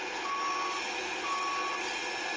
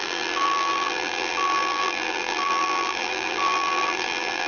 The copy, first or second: second